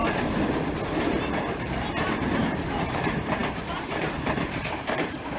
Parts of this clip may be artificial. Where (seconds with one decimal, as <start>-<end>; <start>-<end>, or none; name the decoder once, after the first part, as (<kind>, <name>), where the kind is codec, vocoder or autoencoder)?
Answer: 1.1-5.4 (vocoder, BigVGAN v2)